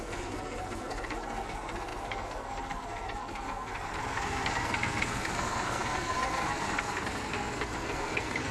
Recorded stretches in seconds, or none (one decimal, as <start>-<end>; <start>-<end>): none